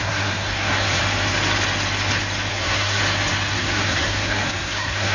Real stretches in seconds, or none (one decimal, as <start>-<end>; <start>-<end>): 1.0-2.5; 3.0-3.5